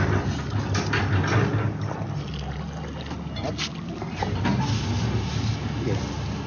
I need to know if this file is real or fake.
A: real